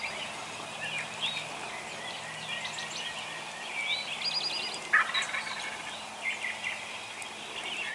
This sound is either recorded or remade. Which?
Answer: recorded